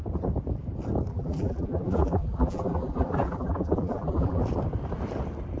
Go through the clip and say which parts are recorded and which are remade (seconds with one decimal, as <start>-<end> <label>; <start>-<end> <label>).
0.0-1.1 recorded; 1.1-4.4 remade; 4.4-5.6 recorded

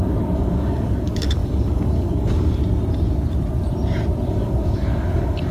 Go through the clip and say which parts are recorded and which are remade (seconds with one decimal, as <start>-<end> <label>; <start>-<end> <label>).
0.0-2.6 remade; 2.6-4.3 recorded; 4.3-5.5 remade

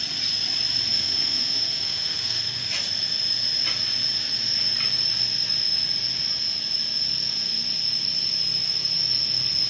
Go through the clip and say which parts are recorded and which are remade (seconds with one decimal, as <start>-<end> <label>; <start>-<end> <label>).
0.0-0.9 recorded; 0.9-2.7 remade; 2.7-9.7 recorded